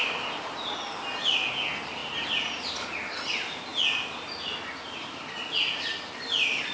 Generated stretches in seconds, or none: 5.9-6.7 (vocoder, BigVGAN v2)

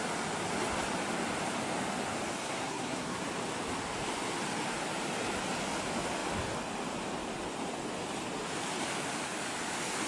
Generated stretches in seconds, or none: 2.4-3.2 (codec, SNAC)